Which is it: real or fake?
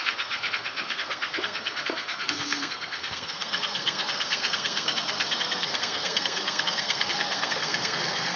fake